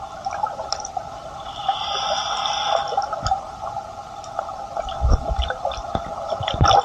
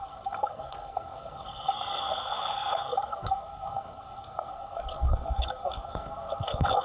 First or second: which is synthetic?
second